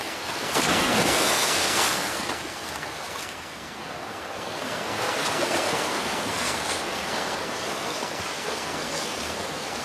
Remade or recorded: remade